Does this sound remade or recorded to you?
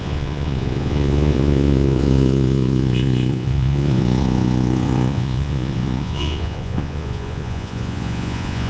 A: remade